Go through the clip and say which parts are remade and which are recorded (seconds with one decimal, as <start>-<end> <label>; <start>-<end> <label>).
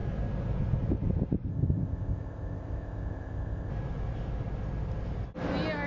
0.0-1.5 recorded; 1.5-3.7 remade; 3.7-5.9 recorded